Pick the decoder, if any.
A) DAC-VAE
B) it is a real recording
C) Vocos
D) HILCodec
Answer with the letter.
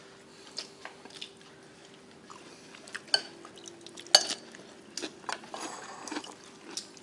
B